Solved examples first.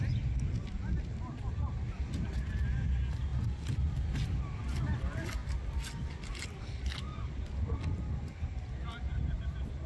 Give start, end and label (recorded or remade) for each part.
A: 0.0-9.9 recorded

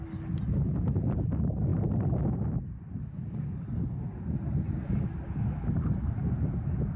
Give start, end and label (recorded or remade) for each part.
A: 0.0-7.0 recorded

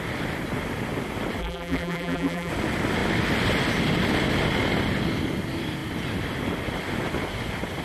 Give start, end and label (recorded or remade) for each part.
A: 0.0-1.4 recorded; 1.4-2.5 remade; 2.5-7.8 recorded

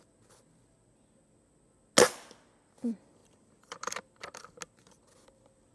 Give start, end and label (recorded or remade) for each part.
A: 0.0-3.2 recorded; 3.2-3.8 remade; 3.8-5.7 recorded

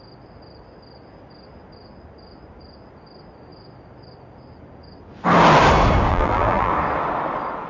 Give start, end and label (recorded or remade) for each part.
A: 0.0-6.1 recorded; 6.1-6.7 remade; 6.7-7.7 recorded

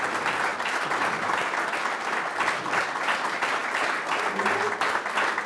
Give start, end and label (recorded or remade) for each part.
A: 0.0-5.5 recorded